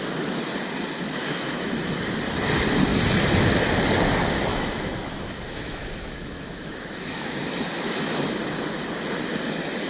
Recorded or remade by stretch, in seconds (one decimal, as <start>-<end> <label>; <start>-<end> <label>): 0.0-1.2 recorded; 1.2-1.7 remade; 1.7-4.5 recorded; 4.5-8.2 remade; 8.2-9.9 recorded